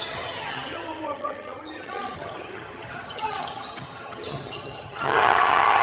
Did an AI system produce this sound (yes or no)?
yes